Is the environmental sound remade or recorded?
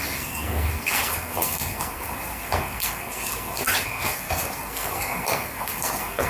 remade